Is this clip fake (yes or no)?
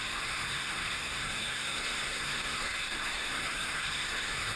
yes